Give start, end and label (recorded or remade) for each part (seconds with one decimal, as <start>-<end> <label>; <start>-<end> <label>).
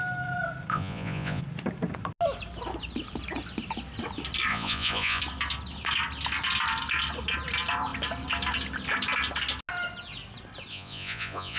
0.0-0.7 recorded; 0.7-1.4 remade; 1.4-4.5 recorded; 4.5-5.2 remade; 5.2-10.7 recorded; 10.7-11.6 remade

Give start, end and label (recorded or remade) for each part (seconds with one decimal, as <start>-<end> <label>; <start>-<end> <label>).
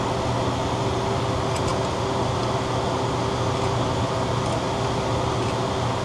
0.0-6.0 recorded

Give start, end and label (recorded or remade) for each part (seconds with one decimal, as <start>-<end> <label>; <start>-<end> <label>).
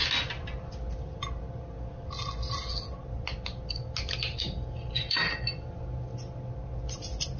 0.0-7.4 recorded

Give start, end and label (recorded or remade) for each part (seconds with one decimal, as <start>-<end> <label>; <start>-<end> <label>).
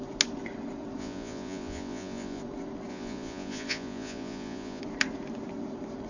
0.0-1.0 recorded; 1.0-2.4 remade; 2.4-2.9 recorded; 2.9-4.8 remade; 4.8-6.1 recorded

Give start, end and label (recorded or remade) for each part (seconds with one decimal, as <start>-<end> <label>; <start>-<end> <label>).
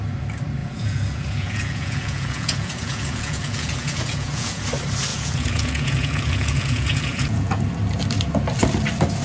0.0-0.6 recorded; 0.6-4.6 remade; 4.6-5.1 recorded; 5.1-7.6 remade; 7.6-9.2 recorded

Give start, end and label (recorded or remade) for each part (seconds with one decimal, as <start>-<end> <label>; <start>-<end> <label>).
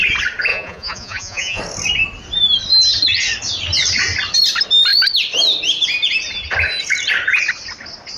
0.0-0.5 recorded; 0.5-1.6 remade; 1.6-8.2 recorded